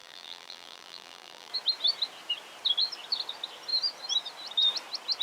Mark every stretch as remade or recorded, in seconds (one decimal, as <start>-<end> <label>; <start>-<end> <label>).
0.0-1.5 remade; 1.5-5.2 recorded